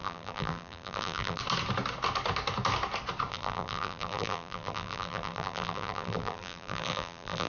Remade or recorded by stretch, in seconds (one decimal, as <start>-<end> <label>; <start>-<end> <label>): 0.0-1.4 remade; 1.4-3.3 recorded; 3.3-7.5 remade